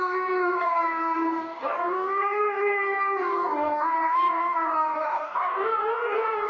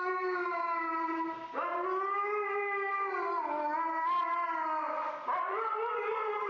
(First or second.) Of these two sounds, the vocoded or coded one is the first